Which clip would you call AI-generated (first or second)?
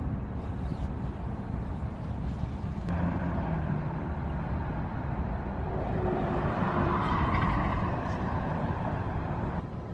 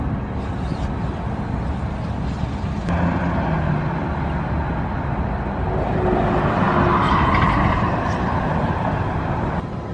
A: first